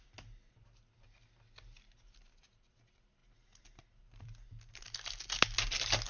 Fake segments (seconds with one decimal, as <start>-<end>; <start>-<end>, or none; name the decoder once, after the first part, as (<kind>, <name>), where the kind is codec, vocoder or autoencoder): none